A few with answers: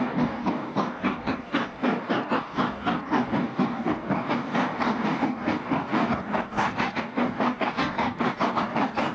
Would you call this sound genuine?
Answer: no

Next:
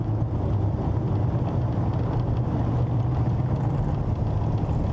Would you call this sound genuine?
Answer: yes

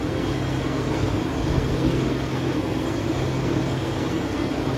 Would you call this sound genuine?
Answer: no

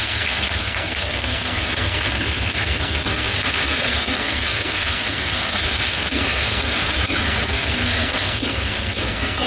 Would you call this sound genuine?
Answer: no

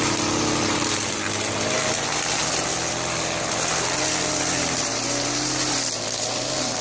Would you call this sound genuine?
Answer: yes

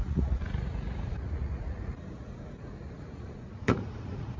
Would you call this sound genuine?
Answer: no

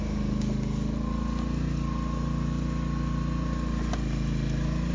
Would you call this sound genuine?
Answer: yes